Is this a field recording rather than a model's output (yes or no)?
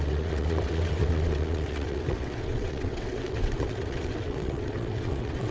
no